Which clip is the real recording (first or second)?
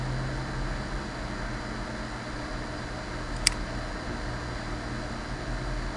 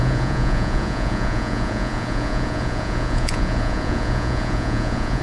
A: first